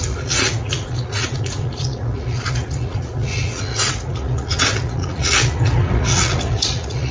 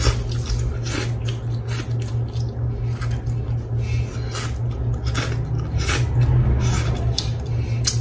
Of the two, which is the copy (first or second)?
first